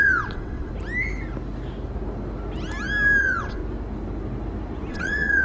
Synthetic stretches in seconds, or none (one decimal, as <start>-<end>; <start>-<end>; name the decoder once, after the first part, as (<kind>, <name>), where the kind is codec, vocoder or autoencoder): 0.0-0.7 (vocoder, WaveNeXt); 3.2-3.6; 4.9-5.4